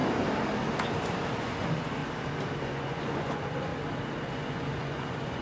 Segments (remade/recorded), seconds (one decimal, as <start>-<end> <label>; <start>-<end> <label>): 0.0-1.4 recorded; 1.4-2.0 remade; 2.0-2.6 recorded; 2.6-3.7 remade; 3.7-4.3 recorded; 4.3-5.4 remade